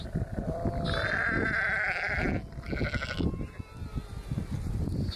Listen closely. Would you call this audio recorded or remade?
recorded